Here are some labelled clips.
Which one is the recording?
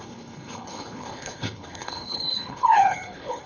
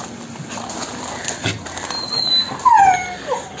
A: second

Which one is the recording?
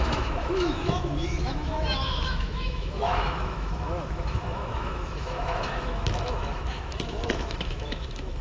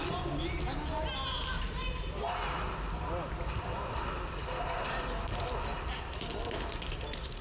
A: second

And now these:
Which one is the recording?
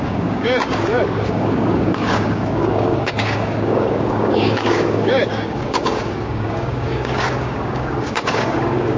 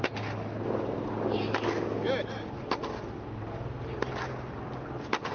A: second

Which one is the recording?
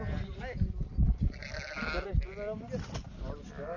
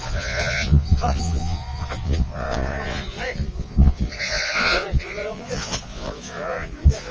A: first